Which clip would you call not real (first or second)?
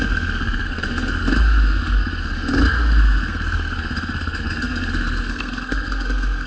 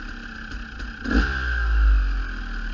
first